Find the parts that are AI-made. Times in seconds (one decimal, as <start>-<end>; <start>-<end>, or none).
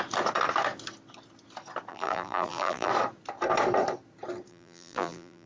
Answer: 1.9-2.9; 4.5-5.5